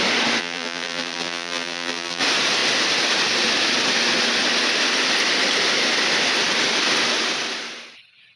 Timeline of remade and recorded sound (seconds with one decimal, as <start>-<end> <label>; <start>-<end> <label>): 0.0-0.4 recorded; 0.4-2.2 remade; 2.2-8.4 recorded